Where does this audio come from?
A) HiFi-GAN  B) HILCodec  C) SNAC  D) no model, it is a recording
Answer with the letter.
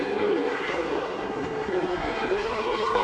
C